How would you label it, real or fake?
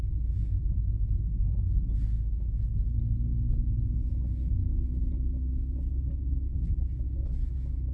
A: real